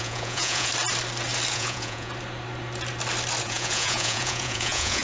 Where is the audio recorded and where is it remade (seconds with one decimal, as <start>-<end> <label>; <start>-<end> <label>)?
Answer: 0.0-0.7 remade; 0.7-1.5 recorded; 1.5-2.1 remade; 2.1-3.4 recorded; 3.4-5.0 remade